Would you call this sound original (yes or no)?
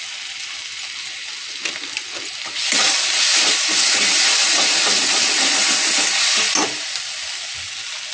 yes